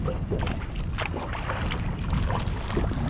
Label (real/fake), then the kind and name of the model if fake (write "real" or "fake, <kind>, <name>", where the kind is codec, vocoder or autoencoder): real